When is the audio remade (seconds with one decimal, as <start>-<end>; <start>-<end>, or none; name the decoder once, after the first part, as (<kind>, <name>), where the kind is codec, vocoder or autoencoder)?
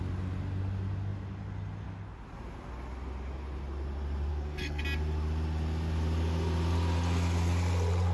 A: 4.3-4.8 (codec, SNAC)